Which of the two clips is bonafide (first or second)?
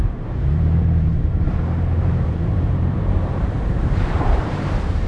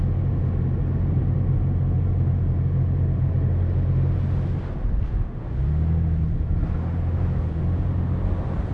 second